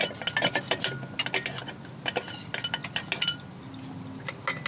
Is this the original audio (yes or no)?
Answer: yes